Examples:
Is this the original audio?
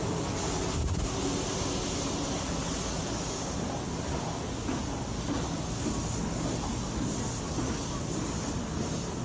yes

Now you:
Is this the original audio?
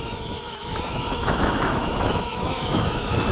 no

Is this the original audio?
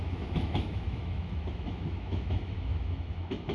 no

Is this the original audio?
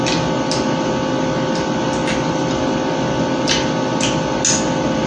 yes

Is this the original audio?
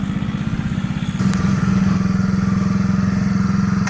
yes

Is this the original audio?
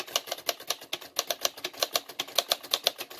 yes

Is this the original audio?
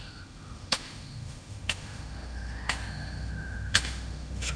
no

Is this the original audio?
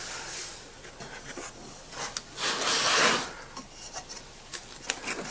yes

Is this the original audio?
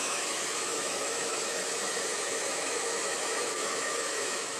no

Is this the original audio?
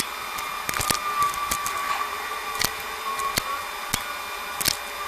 yes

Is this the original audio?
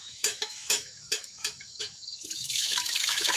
no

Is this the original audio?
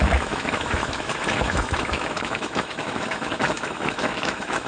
no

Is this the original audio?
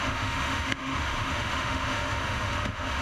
no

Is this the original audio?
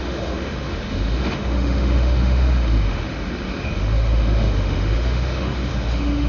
no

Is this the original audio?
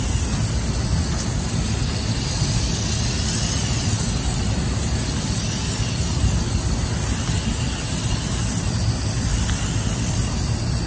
yes